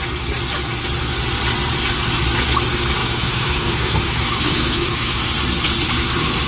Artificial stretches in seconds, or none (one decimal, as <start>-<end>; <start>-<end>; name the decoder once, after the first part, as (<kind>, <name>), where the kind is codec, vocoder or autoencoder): 3.0-5.2 (autoencoder, DAC-VAE)